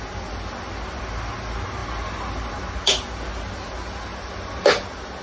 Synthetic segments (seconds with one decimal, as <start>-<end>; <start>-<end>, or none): none